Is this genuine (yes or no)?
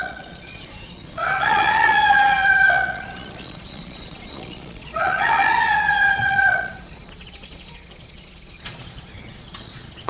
no